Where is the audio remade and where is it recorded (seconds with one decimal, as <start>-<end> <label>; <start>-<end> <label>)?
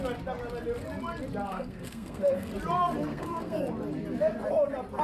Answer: 0.0-1.5 recorded; 1.5-2.5 remade; 2.5-3.1 recorded; 3.1-3.6 remade; 3.6-5.0 recorded